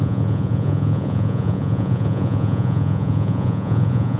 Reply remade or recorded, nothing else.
remade